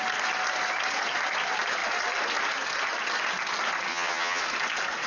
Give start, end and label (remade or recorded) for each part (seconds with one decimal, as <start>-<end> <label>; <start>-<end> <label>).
0.0-3.9 recorded; 3.9-4.4 remade; 4.4-5.1 recorded